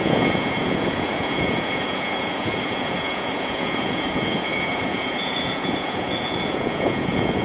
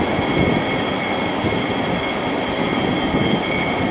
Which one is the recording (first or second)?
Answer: second